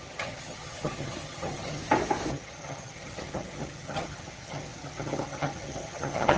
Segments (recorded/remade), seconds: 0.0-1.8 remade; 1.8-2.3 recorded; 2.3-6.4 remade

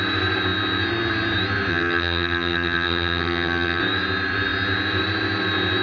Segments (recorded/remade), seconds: 0.0-1.7 recorded; 1.7-3.8 remade; 3.8-5.8 recorded

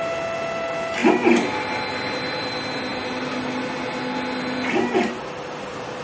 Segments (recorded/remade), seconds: 0.0-6.0 recorded

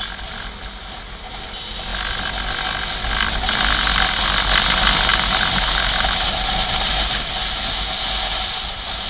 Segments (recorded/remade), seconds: 0.0-9.1 recorded

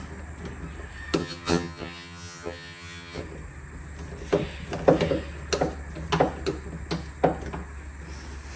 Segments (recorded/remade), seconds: 0.0-1.2 recorded; 1.2-3.2 remade; 3.2-8.6 recorded

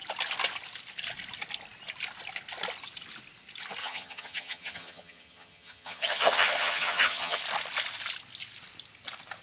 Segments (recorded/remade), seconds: 0.0-3.8 recorded; 3.8-7.4 remade; 7.4-9.4 recorded